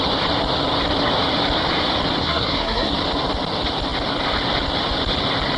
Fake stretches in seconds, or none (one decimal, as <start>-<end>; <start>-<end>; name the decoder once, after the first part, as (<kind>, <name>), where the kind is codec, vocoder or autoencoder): 2.2-2.9 (codec, SNAC)